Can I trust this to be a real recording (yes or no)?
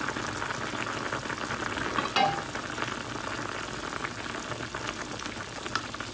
yes